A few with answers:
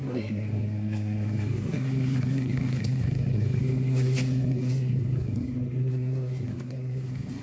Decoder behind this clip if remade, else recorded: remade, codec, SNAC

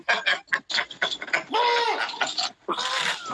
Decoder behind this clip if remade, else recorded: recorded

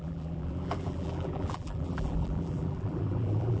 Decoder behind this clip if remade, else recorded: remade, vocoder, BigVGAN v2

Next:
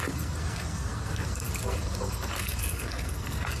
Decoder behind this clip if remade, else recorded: remade, codec, SNAC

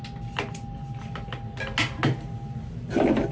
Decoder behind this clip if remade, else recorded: recorded